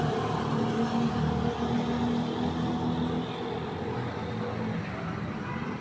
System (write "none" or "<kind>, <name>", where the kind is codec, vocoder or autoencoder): none